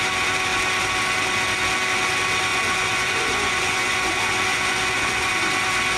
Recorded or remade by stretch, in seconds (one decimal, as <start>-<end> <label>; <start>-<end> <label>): 0.0-2.5 recorded; 2.5-4.1 remade; 4.1-4.5 recorded; 4.5-5.3 remade; 5.3-6.0 recorded